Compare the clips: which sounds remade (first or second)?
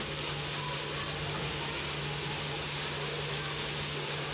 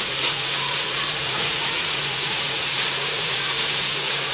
second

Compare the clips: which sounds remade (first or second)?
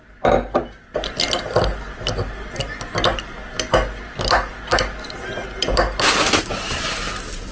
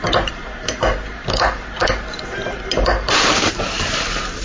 second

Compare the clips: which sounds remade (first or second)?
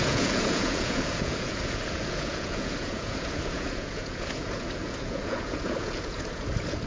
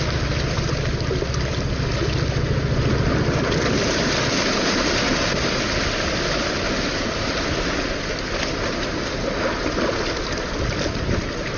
first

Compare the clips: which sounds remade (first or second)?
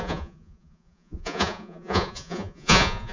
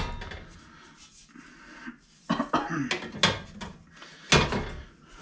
first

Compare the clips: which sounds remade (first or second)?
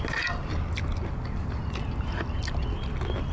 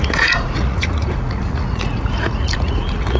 second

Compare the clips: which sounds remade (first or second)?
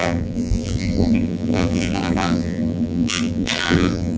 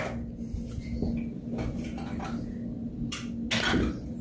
first